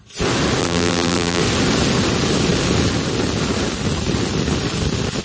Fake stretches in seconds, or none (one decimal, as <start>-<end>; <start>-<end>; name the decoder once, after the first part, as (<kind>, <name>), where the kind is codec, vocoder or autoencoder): 0.6-1.4 (vocoder, BigVGAN v2)